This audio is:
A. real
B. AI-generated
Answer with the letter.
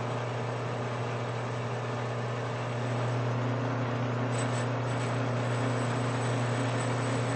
A